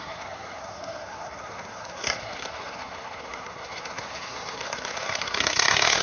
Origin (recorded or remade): remade